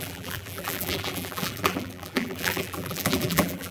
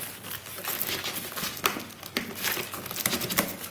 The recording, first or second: second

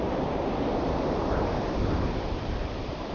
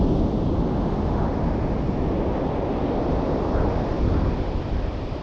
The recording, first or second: second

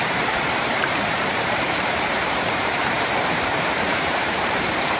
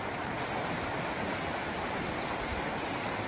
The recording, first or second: second